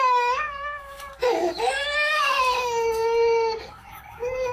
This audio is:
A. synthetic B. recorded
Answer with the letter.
A